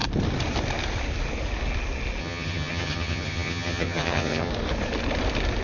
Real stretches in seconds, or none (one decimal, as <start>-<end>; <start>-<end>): 0.0-2.2; 4.5-5.6